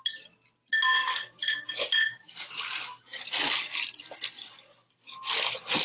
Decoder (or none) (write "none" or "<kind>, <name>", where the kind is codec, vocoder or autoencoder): none